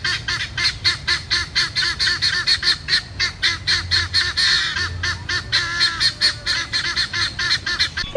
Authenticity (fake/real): real